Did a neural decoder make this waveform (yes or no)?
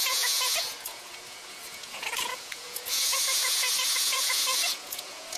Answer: yes